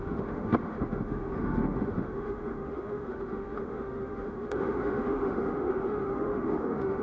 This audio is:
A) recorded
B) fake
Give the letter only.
B